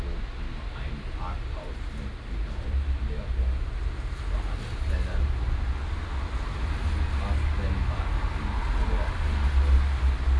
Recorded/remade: recorded